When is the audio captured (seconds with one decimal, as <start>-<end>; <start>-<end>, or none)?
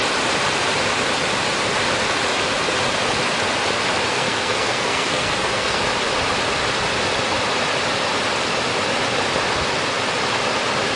0.0-4.1; 5.8-11.0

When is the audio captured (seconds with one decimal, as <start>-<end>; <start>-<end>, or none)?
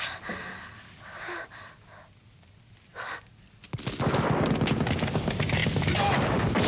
0.0-6.7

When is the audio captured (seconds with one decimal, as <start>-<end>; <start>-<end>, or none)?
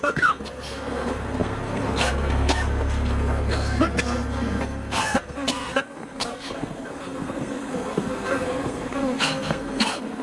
none